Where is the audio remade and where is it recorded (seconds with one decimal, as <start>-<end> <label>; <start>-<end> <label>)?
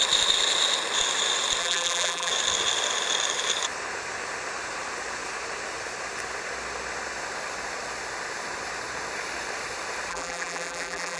0.0-1.6 recorded; 1.6-2.3 remade; 2.3-10.1 recorded; 10.1-11.2 remade